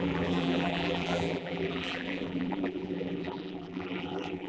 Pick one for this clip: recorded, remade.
remade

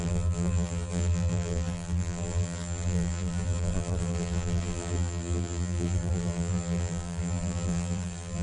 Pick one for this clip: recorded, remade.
remade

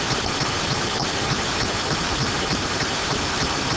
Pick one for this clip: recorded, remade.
remade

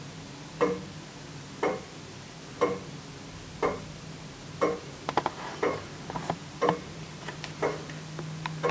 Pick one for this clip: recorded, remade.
remade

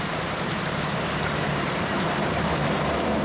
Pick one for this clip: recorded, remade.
remade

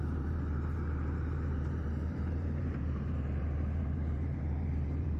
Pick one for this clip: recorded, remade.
remade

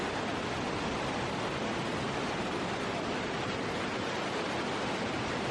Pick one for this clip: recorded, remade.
recorded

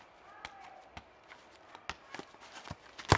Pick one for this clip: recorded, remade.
recorded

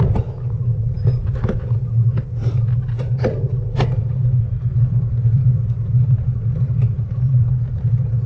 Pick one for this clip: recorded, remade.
recorded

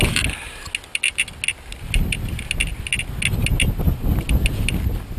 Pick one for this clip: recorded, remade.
recorded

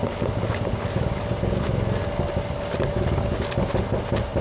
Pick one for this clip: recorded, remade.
recorded